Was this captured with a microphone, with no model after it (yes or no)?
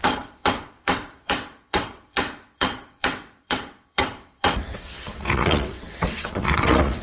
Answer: no